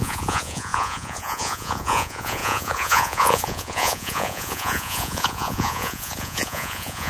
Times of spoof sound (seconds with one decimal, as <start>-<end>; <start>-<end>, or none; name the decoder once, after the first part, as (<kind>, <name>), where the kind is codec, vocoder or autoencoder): 0.0-7.1 (vocoder, Vocos)